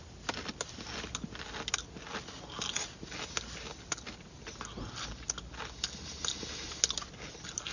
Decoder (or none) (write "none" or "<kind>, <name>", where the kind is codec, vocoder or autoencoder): none